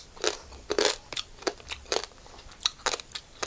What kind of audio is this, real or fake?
fake